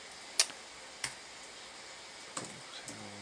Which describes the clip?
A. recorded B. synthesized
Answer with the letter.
A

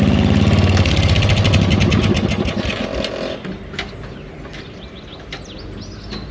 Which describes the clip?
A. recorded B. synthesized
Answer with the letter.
A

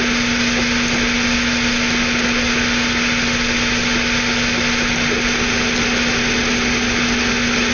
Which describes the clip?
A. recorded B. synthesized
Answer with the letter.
A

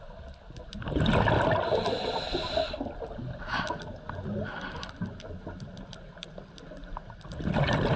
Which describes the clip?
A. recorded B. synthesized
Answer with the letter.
A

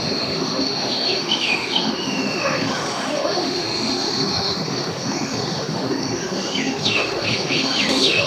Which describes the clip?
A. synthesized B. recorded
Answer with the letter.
A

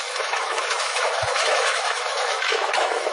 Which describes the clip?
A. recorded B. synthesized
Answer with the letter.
B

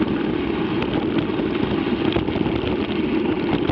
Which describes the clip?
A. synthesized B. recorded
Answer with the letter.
B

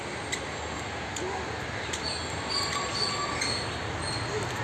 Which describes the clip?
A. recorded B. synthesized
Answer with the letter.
A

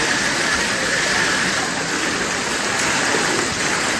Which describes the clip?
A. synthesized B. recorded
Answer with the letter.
B